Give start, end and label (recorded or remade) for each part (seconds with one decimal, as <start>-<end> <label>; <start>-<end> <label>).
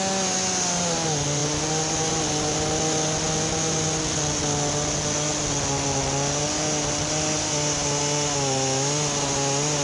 0.0-9.8 recorded